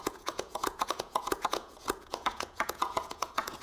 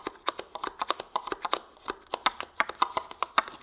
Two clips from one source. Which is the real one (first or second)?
second